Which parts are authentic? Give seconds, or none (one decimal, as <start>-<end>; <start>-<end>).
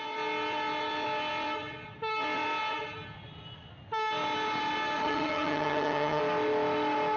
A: 0.0-5.0; 6.2-7.2